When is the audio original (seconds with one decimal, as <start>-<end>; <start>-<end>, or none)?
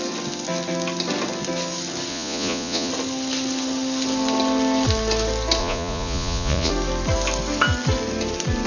0.0-2.1; 2.9-5.6; 6.7-8.7